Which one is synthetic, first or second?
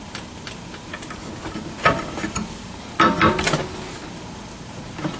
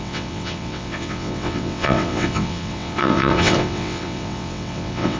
second